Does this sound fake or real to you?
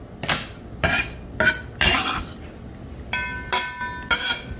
real